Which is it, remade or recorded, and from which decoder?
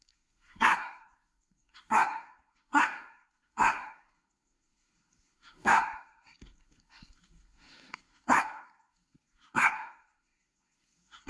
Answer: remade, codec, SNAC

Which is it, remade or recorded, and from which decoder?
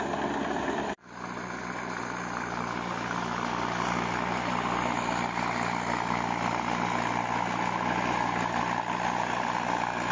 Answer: recorded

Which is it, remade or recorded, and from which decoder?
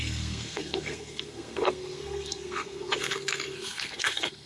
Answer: remade, codec, SNAC